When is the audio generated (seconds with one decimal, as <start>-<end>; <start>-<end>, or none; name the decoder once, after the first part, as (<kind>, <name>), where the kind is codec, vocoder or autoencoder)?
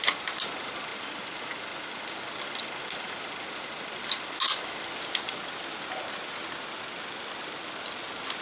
none